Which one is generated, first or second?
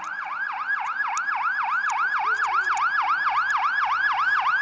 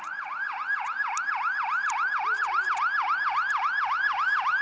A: second